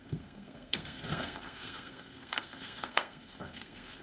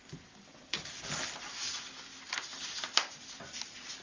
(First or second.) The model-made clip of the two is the first